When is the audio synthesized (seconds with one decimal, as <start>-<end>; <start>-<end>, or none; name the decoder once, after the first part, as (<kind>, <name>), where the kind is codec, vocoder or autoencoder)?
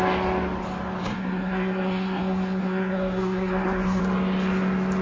1.0-4.0 (codec, SNAC)